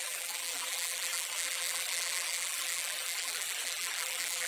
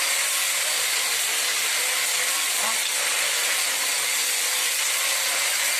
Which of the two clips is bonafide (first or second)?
second